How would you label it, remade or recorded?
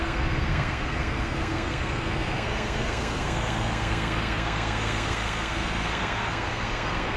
remade